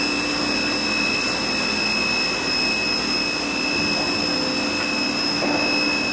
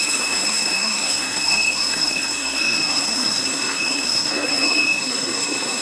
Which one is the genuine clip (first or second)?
first